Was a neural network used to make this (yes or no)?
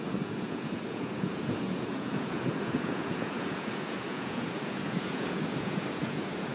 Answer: yes